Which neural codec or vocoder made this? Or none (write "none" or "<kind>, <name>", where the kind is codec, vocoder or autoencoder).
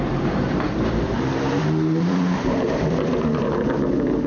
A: vocoder, BigVGAN v2